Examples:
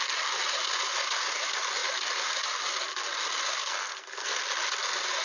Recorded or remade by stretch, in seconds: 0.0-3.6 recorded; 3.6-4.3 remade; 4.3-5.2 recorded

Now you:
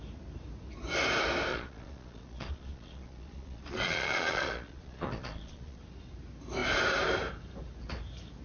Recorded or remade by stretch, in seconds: 0.0-1.5 recorded; 1.5-5.8 remade; 5.8-8.4 recorded

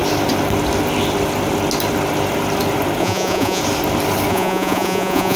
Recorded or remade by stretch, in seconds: 0.0-3.0 recorded; 3.0-3.6 remade; 3.6-4.3 recorded; 4.3-5.4 remade

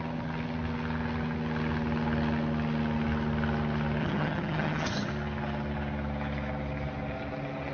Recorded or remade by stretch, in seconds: 0.0-4.0 recorded; 4.0-5.1 remade; 5.1-7.7 recorded

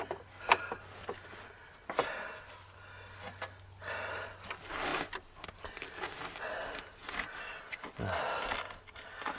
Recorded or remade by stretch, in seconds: 0.0-9.4 recorded